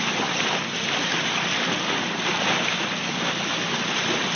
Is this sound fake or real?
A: real